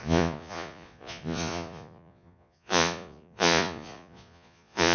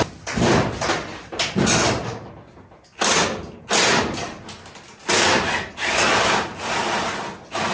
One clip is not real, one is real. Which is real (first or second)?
second